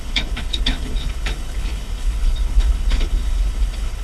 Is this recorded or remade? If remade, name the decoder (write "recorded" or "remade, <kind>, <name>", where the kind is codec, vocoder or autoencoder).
remade, codec, HILCodec